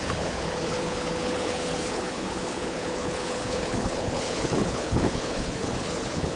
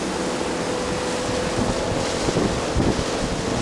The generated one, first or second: first